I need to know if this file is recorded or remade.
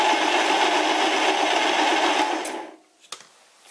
recorded